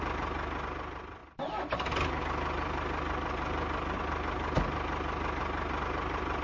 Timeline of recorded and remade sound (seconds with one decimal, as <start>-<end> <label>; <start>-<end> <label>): 0.0-6.4 recorded